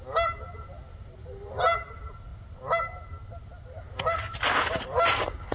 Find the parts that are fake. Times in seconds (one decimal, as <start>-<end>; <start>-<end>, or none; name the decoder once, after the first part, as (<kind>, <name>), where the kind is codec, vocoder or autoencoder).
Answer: none